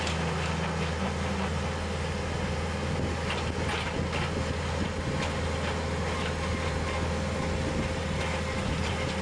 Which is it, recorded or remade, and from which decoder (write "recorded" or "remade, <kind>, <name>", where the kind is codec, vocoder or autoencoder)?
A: recorded